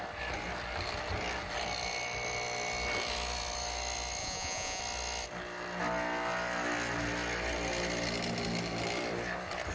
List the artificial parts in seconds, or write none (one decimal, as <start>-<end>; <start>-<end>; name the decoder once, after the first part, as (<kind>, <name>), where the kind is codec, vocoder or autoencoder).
4.2-4.8 (vocoder, Vocos)